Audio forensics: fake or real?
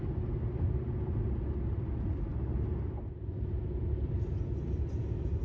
real